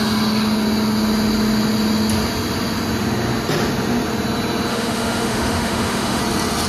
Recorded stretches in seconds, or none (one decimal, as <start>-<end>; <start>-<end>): 0.0-4.7; 6.2-6.7